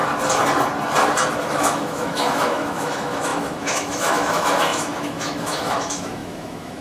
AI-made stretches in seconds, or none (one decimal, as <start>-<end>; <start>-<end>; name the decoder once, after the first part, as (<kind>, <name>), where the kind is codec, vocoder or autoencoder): 1.4-6.8 (autoencoder, DAC-VAE)